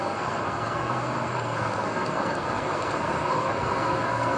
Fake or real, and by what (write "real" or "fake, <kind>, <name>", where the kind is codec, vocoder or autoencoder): fake, codec, SNAC